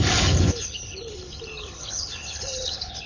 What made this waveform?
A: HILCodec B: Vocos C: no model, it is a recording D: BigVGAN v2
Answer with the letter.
A